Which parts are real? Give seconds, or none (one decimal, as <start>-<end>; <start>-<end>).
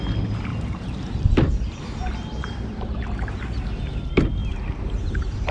0.0-0.5; 3.8-4.4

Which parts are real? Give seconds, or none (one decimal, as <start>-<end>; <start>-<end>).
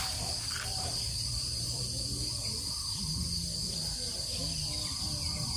0.0-0.7; 1.8-5.6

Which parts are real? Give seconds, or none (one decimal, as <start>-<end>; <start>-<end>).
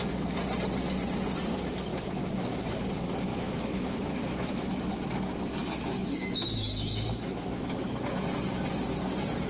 0.0-1.9; 2.6-3.3; 4.8-5.6; 8.2-9.5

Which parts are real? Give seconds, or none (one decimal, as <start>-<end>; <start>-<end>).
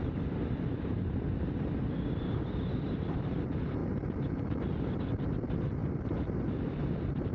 0.0-5.8; 6.6-7.3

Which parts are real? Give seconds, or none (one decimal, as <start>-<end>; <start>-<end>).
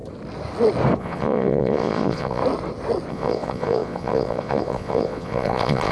0.0-1.0; 2.4-3.1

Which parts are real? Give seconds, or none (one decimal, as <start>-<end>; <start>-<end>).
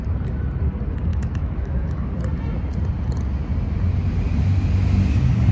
0.0-1.1; 2.1-5.5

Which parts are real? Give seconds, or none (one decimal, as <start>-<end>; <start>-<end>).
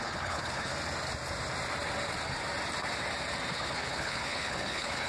0.7-3.5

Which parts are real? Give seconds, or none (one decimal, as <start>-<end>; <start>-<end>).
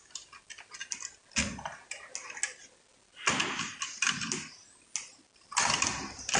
0.0-6.4